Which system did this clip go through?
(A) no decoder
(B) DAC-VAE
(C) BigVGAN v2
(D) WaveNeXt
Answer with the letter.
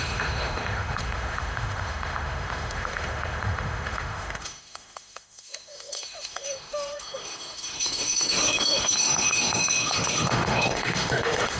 B